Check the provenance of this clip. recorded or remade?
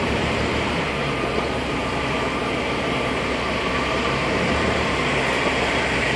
remade